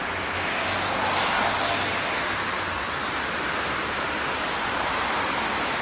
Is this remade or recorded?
recorded